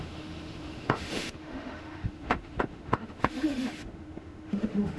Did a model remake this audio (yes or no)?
yes